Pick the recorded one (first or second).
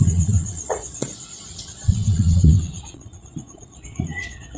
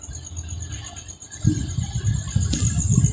second